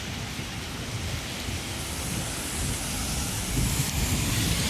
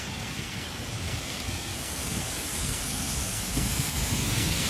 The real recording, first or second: first